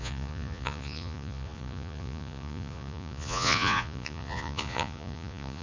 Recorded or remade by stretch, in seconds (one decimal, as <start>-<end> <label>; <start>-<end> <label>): 0.0-5.6 remade